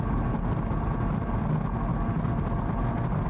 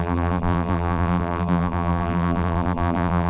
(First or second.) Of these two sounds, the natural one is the first